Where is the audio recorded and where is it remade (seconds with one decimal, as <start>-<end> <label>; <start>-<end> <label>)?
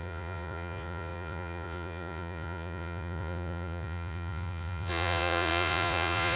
0.0-6.4 remade